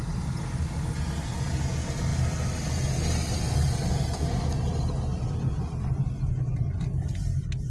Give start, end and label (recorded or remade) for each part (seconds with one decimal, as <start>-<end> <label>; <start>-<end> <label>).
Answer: 0.0-7.7 recorded